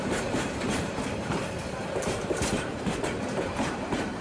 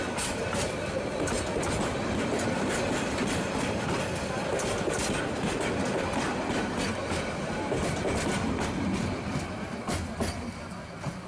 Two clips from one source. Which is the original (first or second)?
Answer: second